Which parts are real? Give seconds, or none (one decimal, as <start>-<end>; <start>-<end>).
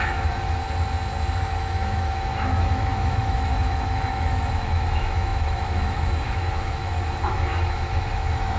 0.6-1.4